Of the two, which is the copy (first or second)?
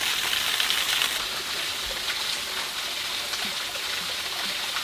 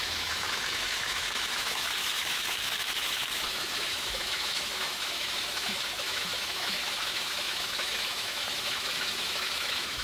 second